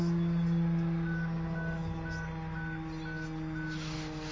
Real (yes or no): yes